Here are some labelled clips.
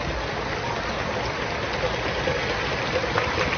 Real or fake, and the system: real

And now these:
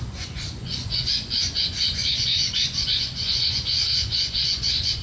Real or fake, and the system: fake, vocoder, Vocos